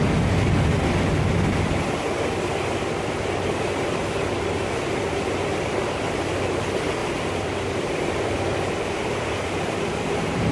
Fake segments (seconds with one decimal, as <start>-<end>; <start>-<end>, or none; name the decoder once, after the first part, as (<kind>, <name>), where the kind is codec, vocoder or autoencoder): none